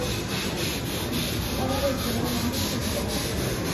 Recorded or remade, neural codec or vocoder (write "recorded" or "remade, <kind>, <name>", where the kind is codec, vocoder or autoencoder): recorded